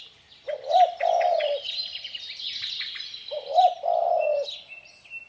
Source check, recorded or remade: recorded